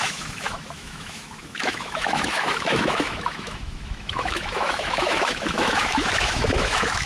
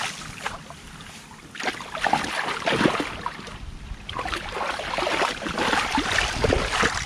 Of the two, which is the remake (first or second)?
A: first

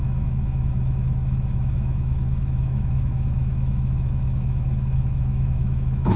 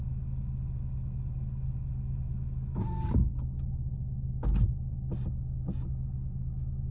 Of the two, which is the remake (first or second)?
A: first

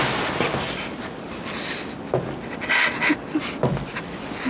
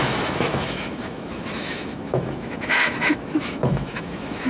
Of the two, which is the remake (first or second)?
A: second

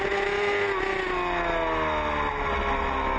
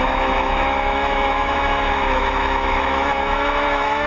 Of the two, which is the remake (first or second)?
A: second